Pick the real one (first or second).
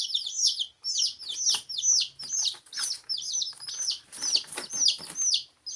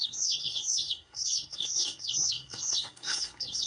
first